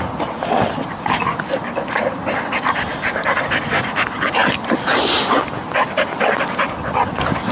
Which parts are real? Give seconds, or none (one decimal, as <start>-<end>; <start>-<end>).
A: 0.0-1.3; 2.0-4.4; 5.4-7.5